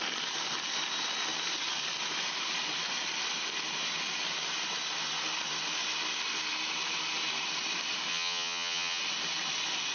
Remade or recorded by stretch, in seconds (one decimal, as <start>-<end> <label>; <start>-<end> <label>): 0.0-8.1 recorded; 8.1-9.0 remade; 9.0-9.9 recorded